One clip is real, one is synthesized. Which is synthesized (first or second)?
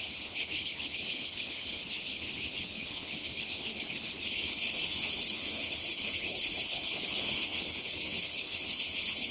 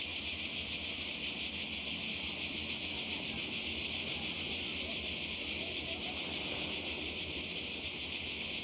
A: first